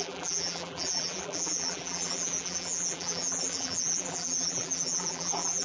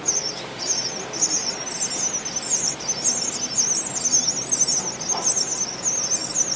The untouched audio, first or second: second